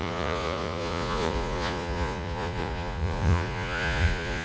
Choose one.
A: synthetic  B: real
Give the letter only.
A